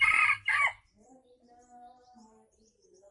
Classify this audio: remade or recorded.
remade